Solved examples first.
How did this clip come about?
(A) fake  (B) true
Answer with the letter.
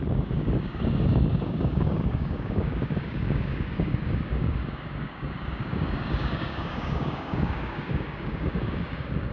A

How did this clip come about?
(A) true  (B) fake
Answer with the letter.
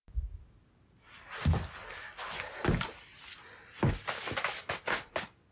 A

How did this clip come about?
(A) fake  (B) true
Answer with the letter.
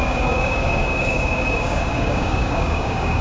A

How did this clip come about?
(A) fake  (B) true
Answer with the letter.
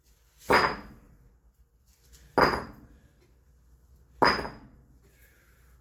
B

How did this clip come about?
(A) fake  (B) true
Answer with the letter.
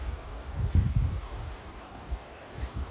A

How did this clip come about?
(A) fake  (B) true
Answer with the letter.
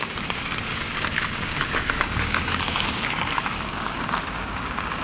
A